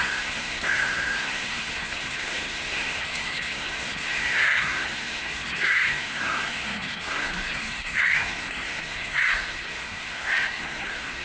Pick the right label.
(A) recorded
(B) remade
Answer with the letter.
B